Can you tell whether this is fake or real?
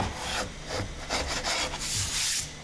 real